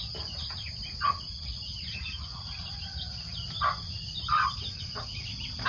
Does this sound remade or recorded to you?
remade